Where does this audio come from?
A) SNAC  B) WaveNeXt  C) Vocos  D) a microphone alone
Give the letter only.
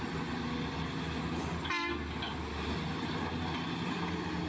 D